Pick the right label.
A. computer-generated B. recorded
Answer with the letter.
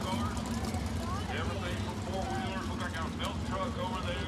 B